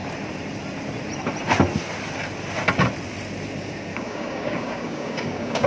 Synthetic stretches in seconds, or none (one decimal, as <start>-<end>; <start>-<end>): 3.9-5.7